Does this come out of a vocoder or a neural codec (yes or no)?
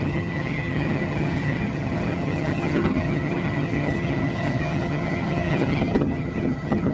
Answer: yes